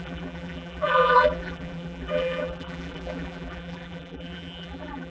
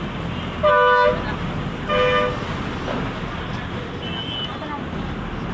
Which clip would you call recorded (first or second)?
second